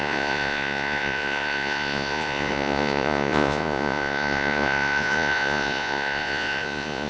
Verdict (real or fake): fake